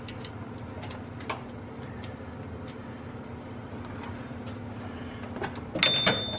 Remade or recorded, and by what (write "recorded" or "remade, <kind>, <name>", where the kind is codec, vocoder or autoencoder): recorded